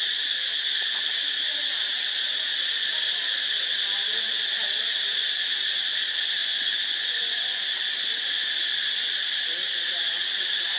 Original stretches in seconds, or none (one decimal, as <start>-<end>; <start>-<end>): 0.0-6.4; 7.6-10.8